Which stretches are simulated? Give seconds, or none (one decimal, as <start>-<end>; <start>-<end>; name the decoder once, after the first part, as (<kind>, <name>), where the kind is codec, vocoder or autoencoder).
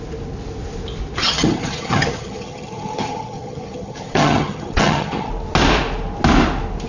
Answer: 1.2-5.3 (vocoder, HiFi-GAN)